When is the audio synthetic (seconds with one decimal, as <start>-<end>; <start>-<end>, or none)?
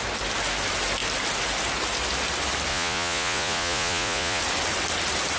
2.7-4.4